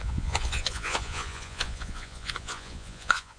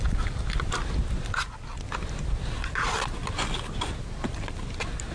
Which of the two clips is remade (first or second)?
first